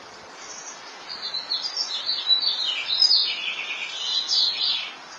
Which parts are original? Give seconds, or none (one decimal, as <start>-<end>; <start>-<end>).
0.0-5.2